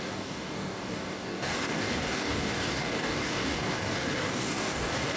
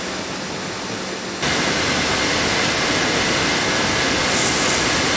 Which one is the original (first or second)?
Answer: second